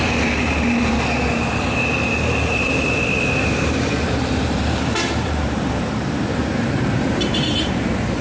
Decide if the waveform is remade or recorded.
remade